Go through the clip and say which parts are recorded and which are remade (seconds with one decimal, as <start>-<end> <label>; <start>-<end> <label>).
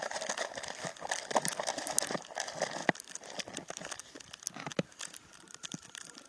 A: 0.0-6.3 recorded